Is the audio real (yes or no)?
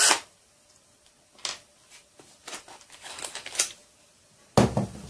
yes